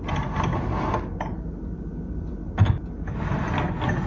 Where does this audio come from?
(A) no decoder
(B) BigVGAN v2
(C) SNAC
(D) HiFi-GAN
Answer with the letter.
A